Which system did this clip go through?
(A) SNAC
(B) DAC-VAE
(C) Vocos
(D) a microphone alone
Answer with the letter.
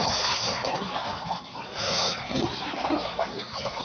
A